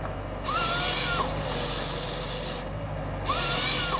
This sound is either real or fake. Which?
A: real